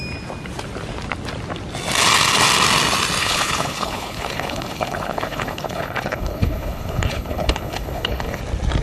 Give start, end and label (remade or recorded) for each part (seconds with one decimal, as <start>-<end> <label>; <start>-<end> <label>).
0.0-3.2 recorded; 3.2-8.4 remade; 8.4-8.8 recorded